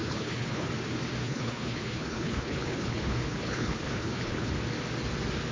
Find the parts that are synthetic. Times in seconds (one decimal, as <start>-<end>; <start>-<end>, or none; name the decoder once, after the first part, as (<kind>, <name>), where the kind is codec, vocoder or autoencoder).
0.0-0.7 (codec, HILCodec); 1.2-4.5